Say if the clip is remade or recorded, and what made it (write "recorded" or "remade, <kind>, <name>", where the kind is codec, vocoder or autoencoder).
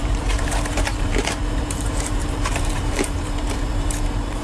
remade, vocoder, BigVGAN v2